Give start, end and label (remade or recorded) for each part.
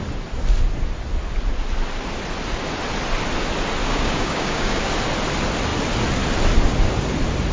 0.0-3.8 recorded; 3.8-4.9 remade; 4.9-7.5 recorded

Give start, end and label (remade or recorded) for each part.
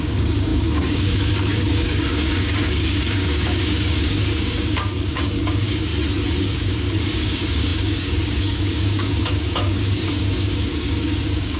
0.0-5.9 remade; 5.9-6.4 recorded; 6.4-11.6 remade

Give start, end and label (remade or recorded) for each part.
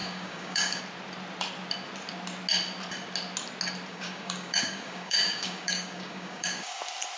0.0-0.8 remade; 0.8-3.9 recorded; 3.9-6.8 remade; 6.8-7.2 recorded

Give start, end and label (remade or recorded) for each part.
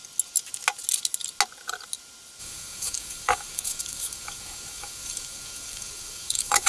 0.0-2.4 recorded; 2.4-6.7 remade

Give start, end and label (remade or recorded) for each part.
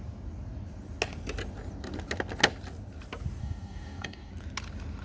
0.0-3.4 recorded; 3.4-4.3 remade; 4.3-5.0 recorded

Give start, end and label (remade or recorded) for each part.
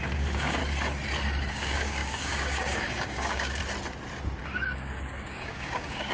0.0-0.6 remade; 0.6-1.5 recorded; 1.5-3.6 remade; 3.6-4.4 recorded; 4.4-6.1 remade